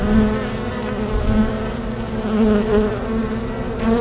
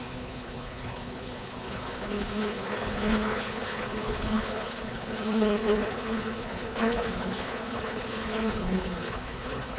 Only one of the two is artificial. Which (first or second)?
second